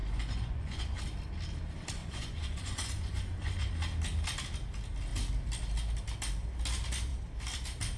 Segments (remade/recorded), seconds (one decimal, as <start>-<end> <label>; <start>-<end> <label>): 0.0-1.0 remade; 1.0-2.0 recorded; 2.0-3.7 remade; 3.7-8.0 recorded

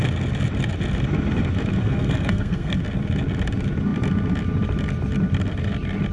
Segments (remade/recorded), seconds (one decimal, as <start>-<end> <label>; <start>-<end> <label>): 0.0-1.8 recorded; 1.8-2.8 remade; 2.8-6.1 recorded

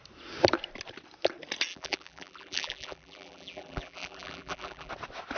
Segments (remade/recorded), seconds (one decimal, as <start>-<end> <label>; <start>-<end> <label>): 0.0-1.7 recorded; 1.7-4.9 remade; 4.9-5.4 recorded

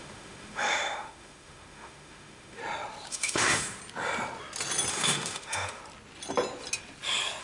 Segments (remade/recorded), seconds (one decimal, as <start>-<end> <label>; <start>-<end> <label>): 0.0-2.6 remade; 2.6-3.1 recorded; 3.1-3.8 remade; 3.8-4.9 recorded; 4.9-5.8 remade; 5.8-7.4 recorded

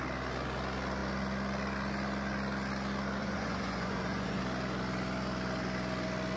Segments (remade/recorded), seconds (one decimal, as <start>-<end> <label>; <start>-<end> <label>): 0.0-3.2 recorded; 3.2-4.4 remade; 4.4-6.4 recorded

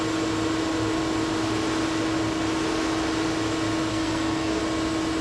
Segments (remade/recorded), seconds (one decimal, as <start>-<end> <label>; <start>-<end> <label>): 0.0-3.9 recorded; 3.9-4.6 remade; 4.6-5.2 recorded